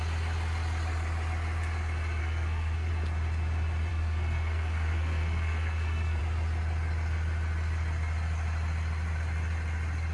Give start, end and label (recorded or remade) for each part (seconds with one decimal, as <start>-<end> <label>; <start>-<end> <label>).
0.0-2.2 recorded; 2.2-2.9 remade; 2.9-3.9 recorded; 3.9-6.2 remade; 6.2-10.1 recorded